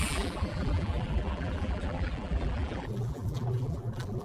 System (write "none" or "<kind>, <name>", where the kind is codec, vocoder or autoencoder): vocoder, BigVGAN v2